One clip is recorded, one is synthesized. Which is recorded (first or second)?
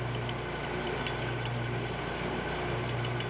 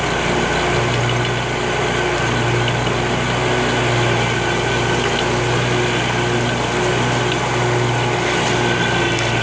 second